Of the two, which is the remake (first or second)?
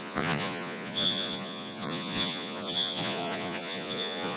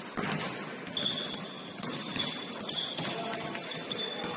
first